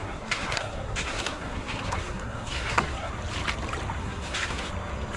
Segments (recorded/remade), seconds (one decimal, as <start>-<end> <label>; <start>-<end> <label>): 0.0-3.1 remade; 3.1-4.0 recorded; 4.0-4.7 remade; 4.7-5.2 recorded

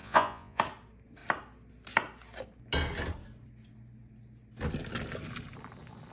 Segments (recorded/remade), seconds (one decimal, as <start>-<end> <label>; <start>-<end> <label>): 0.0-0.6 remade; 0.6-6.1 recorded